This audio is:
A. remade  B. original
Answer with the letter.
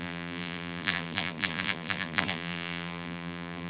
A